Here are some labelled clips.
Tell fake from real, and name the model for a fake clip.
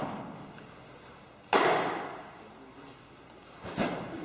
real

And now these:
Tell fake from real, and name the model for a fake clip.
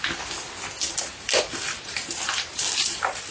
real